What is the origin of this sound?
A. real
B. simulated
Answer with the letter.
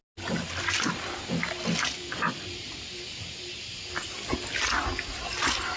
A